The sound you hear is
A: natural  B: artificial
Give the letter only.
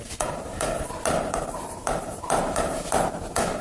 B